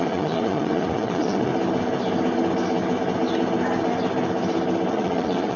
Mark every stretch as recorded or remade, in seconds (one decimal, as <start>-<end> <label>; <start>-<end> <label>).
0.0-1.5 remade; 1.5-4.9 recorded; 4.9-5.6 remade